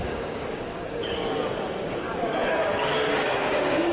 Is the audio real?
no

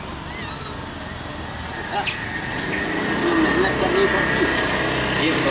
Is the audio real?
yes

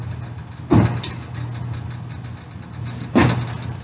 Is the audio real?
yes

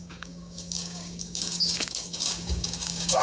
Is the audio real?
no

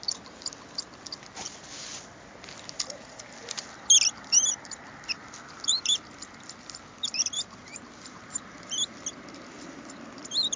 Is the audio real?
yes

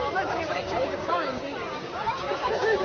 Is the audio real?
no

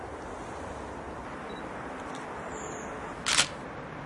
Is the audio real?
yes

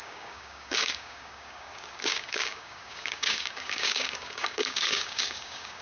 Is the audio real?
no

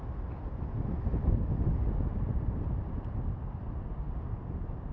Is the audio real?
yes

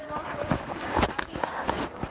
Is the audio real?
no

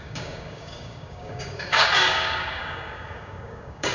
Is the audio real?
no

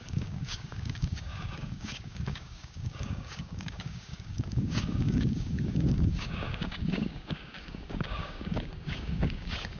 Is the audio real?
no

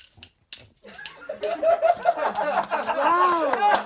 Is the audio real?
yes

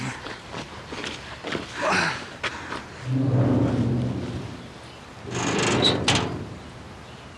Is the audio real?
yes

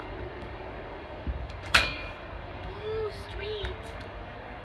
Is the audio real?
no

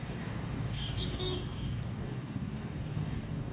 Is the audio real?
no